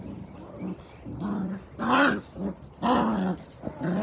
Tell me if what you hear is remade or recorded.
recorded